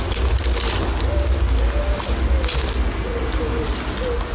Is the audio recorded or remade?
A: recorded